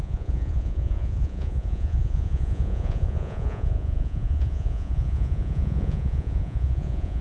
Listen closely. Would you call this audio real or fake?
fake